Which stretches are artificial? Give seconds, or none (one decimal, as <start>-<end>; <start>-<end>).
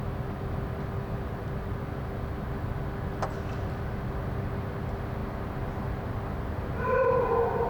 none